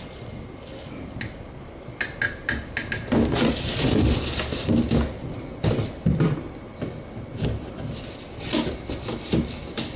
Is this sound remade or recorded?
recorded